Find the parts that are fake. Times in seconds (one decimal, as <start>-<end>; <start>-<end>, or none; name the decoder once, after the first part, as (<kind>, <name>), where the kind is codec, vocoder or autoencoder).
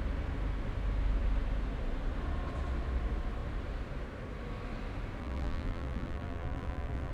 5.2-7.1 (vocoder, BigVGAN v2)